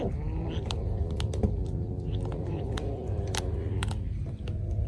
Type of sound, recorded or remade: recorded